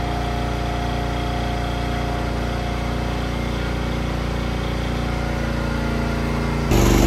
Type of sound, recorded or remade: recorded